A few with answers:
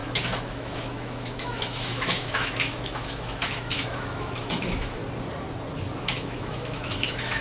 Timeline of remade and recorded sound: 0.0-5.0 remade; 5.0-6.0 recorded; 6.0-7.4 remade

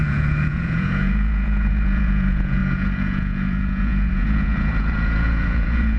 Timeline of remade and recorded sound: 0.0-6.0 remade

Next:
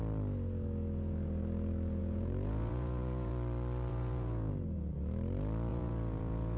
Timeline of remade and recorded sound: 0.0-2.0 recorded; 2.0-3.3 remade; 3.3-3.9 recorded; 3.9-4.5 remade; 4.5-5.7 recorded; 5.7-6.6 remade

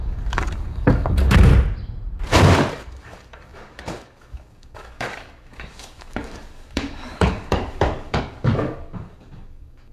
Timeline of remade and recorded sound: 0.0-1.5 remade; 1.5-2.7 recorded; 2.7-9.9 remade